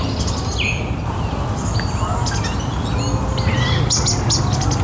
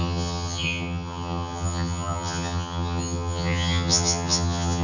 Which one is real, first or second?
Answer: first